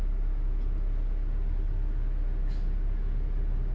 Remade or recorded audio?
recorded